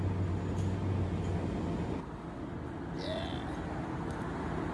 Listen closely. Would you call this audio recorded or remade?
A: recorded